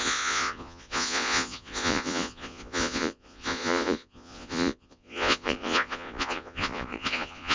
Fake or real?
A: fake